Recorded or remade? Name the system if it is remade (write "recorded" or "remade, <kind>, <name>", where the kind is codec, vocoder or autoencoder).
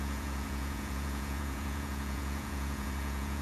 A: remade, vocoder, Vocos